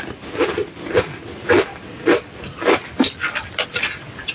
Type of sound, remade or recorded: recorded